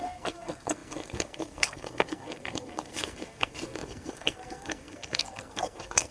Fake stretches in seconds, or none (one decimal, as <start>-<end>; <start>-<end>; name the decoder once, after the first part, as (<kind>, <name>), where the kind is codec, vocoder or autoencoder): 0.0-6.1 (codec, SNAC)